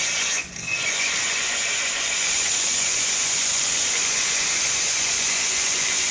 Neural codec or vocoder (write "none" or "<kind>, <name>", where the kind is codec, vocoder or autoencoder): vocoder, Vocos